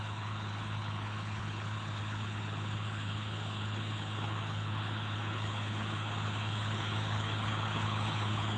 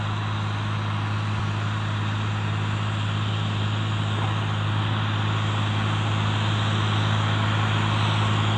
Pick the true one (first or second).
second